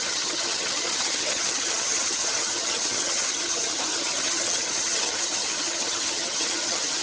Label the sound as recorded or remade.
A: remade